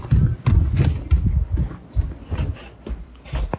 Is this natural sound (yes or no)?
yes